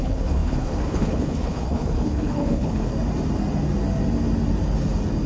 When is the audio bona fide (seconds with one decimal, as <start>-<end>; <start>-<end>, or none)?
2.9-5.3